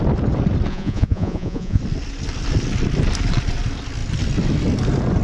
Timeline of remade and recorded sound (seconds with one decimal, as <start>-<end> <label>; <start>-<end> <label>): 0.0-0.7 recorded; 0.7-1.8 remade; 1.8-5.2 recorded